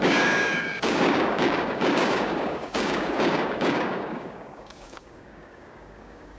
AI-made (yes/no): yes